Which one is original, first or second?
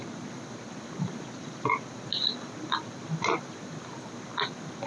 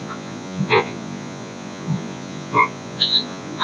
first